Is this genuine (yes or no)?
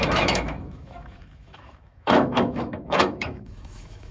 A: no